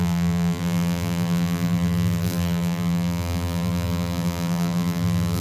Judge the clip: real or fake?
fake